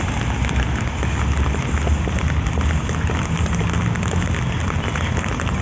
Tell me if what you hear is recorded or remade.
recorded